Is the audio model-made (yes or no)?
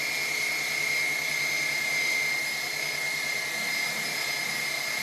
no